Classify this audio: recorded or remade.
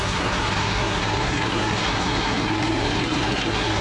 remade